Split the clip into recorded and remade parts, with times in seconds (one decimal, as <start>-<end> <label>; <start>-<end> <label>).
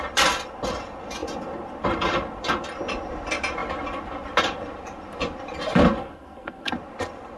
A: 0.0-6.0 recorded; 6.0-6.7 remade; 6.7-7.4 recorded